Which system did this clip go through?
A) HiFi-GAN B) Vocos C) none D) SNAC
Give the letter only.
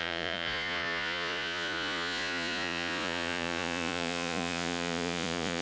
B